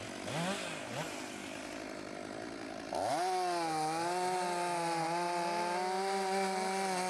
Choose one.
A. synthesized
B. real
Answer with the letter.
B